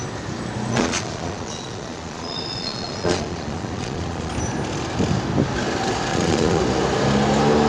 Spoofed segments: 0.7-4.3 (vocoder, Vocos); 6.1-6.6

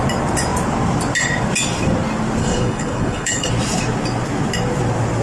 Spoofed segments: 2.4-3.5 (codec, HILCodec)

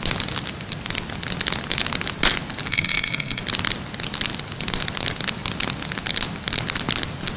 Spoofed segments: 2.7-3.4 (codec, SNAC)

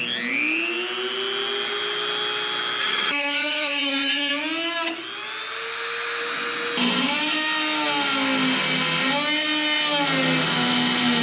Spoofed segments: 2.8-4.3 (vocoder, HiFi-GAN)

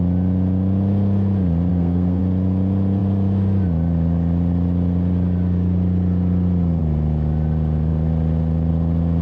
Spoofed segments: 1.7-2.2 (codec, SNAC)

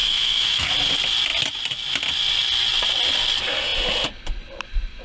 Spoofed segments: 0.0-0.7 (autoencoder, DAC-VAE)